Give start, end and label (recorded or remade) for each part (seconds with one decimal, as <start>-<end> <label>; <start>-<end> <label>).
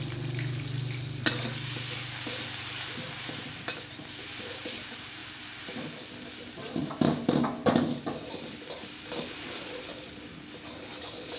0.0-11.4 recorded